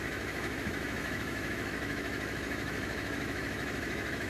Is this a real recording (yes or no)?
no